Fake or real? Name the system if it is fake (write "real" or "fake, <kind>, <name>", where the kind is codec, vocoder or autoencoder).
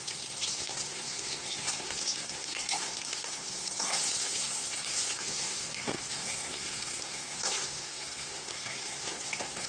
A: fake, codec, SNAC